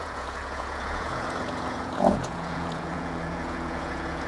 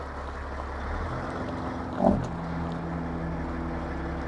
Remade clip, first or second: first